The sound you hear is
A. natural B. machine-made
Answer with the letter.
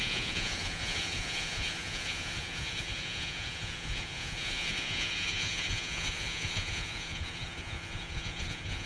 B